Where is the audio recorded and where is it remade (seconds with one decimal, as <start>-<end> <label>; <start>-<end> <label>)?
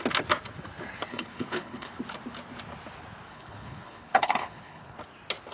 0.0-1.1 recorded; 1.1-2.0 remade; 2.0-3.3 recorded; 3.3-5.0 remade; 5.0-5.5 recorded